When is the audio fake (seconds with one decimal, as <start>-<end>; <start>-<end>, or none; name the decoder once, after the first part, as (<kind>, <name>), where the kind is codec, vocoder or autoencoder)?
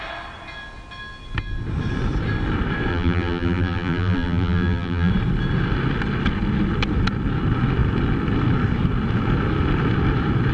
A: 2.9-5.1 (vocoder, BigVGAN v2)